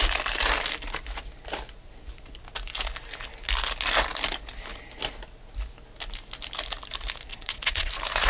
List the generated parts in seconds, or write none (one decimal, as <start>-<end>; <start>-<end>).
7.3-7.9